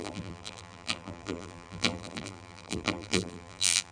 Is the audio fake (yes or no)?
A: yes